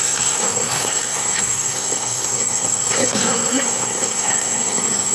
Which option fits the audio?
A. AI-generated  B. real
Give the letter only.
A